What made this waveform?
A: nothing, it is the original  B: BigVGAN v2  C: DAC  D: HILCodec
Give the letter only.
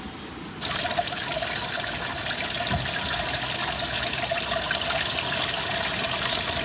A